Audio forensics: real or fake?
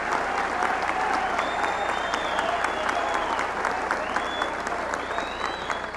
real